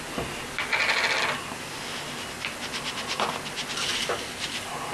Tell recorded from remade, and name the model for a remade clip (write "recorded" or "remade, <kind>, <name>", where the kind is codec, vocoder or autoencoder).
recorded